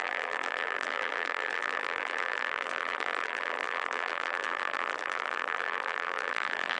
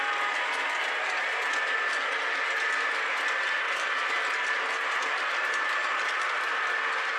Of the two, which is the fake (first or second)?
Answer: first